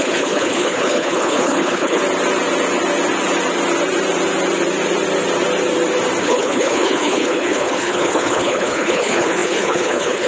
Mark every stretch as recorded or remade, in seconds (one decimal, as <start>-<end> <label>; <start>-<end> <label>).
0.0-2.0 remade; 2.0-6.2 recorded; 6.2-10.3 remade